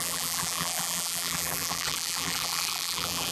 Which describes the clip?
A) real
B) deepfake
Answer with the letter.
B